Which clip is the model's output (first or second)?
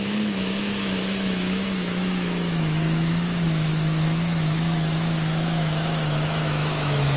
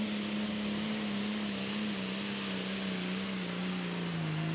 first